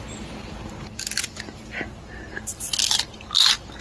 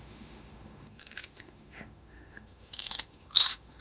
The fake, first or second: second